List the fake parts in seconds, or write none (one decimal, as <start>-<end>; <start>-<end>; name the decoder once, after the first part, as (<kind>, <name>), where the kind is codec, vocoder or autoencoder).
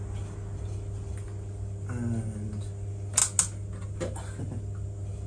none